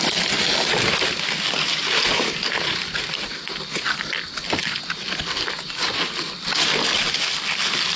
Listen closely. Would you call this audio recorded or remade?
recorded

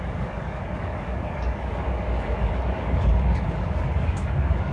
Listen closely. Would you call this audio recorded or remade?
remade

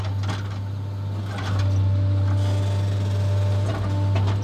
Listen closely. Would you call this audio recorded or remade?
recorded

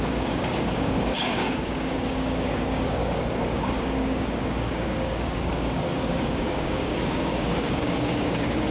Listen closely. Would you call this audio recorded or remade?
remade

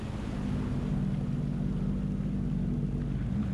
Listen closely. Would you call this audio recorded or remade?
recorded